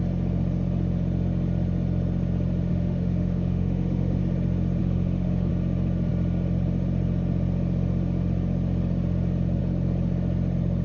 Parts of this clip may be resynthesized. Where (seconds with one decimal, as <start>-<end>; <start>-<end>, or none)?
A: 2.7-4.2; 4.8-5.5